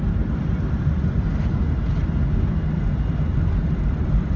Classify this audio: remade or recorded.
recorded